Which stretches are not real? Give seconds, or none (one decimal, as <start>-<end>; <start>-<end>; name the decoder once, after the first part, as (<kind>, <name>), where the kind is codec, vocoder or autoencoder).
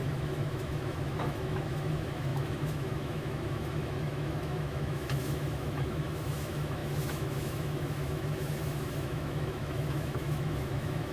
0.0-11.1 (autoencoder, DAC-VAE)